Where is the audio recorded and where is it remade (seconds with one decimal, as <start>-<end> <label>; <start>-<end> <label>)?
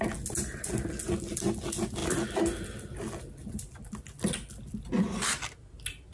0.0-6.1 recorded